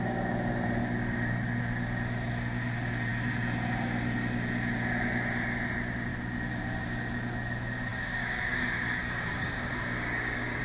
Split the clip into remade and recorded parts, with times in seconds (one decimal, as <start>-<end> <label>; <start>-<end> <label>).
0.0-0.8 recorded; 0.8-1.6 remade; 1.6-7.9 recorded; 7.9-10.6 remade